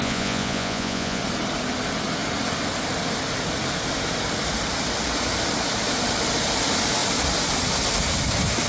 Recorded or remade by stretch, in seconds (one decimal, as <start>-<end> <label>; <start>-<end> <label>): 0.0-1.2 remade; 1.2-8.7 recorded